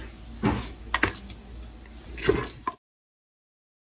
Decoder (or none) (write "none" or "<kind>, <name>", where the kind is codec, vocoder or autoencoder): none